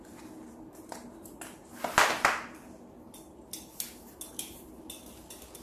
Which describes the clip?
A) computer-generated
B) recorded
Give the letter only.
B